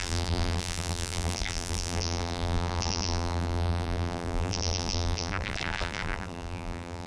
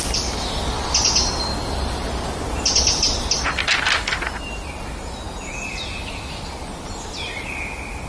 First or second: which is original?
second